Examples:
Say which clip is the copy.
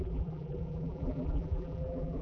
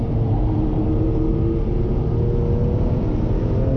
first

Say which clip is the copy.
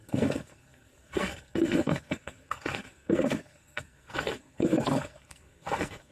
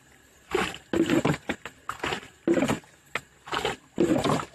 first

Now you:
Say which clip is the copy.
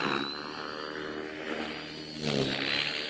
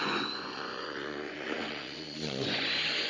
second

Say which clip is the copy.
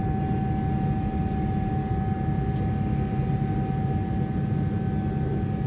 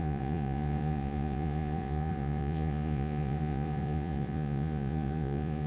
second